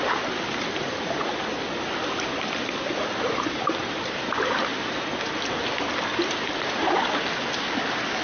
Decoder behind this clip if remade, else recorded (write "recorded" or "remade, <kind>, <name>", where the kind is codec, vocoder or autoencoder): recorded